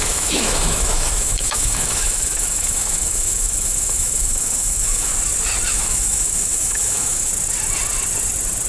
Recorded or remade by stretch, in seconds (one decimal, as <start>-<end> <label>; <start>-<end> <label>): 0.0-5.1 remade; 5.1-5.7 recorded; 5.7-7.3 remade; 7.3-8.7 recorded